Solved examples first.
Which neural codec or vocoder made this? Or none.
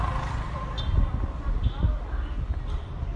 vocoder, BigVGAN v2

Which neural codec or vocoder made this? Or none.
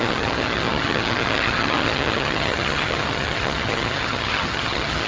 vocoder, HiFi-GAN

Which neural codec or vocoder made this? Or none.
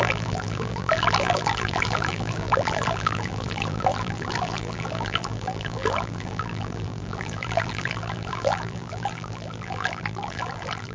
vocoder, BigVGAN v2